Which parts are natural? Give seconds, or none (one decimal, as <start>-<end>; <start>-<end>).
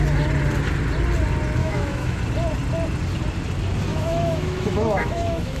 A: 0.0-1.6; 2.2-3.9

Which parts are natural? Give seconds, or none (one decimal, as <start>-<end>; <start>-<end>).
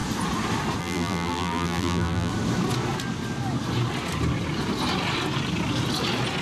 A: 0.0-0.8; 2.3-6.4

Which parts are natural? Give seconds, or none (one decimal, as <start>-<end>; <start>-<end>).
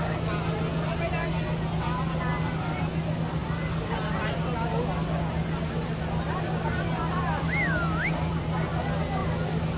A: 0.0-9.8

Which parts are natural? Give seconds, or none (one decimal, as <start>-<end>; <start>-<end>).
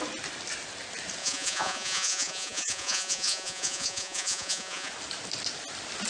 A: 0.0-1.2; 4.9-6.1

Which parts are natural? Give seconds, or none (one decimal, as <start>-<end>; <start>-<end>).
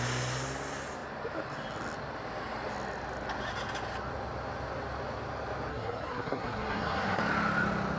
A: 0.0-5.7; 7.2-8.0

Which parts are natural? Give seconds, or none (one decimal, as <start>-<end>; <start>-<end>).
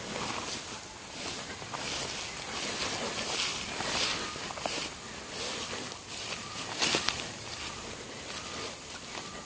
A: 0.0-9.4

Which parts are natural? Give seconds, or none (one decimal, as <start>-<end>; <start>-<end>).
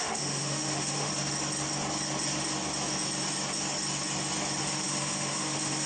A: 1.1-4.6